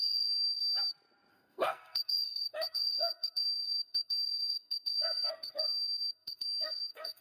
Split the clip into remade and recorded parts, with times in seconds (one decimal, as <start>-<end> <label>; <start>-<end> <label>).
0.0-0.6 remade; 0.6-1.3 recorded; 1.3-7.2 remade